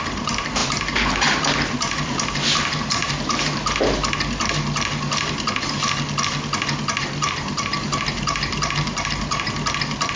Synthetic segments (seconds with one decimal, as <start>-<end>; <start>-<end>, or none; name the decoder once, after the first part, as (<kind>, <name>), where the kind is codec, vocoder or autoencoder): 0.0-4.0 (vocoder, BigVGAN v2); 7.0-10.2

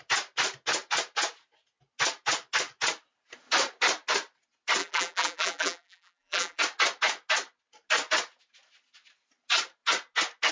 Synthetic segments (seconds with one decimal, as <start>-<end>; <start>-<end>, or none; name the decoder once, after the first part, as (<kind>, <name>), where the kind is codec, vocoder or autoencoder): 4.8-6.6 (vocoder, BigVGAN v2)

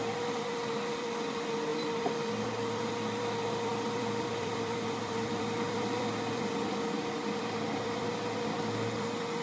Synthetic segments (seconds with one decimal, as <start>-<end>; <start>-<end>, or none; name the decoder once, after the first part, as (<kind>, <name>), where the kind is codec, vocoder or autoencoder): 1.7-2.9 (vocoder, BigVGAN v2); 3.7-8.1